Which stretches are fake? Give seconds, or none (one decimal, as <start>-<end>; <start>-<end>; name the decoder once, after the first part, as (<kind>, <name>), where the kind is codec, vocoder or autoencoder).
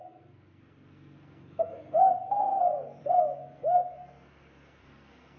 0.0-5.4 (codec, SNAC)